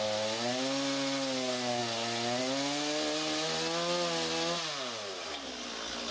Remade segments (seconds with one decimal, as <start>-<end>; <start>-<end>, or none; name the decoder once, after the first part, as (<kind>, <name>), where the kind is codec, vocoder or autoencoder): none